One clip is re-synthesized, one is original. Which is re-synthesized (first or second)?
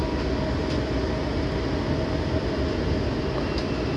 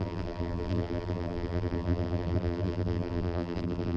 second